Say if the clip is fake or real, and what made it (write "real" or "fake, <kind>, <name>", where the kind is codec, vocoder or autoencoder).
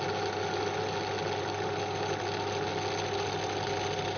real